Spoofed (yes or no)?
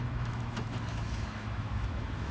yes